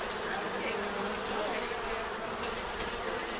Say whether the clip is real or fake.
real